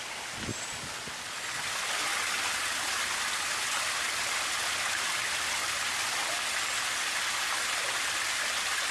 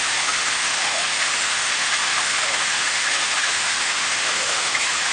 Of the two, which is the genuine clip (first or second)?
first